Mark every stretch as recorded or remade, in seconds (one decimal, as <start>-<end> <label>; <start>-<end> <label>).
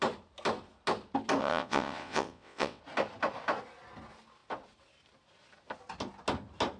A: 0.0-1.4 recorded; 1.4-2.8 remade; 2.8-6.8 recorded